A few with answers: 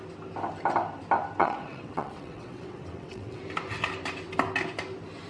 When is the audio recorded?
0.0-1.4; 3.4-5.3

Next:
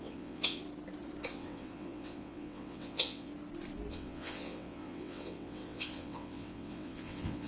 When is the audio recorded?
0.6-1.3; 3.3-3.9

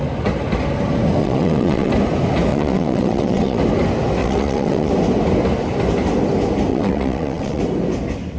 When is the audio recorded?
0.0-1.2; 1.9-2.5; 3.6-4.2; 4.9-6.7; 7.6-8.4

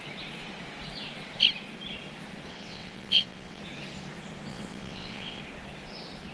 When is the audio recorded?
0.0-2.5; 3.6-4.5; 5.4-6.3

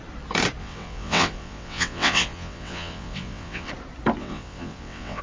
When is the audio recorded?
0.0-0.6; 3.7-4.2

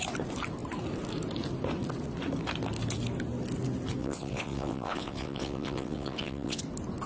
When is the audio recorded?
0.0-4.0; 6.6-7.1

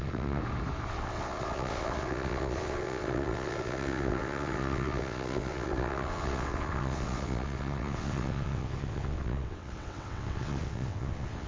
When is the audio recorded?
0.4-0.9

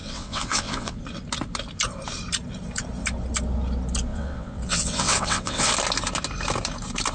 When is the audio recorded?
1.0-4.1; 5.7-7.1